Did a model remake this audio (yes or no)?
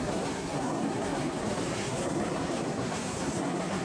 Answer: yes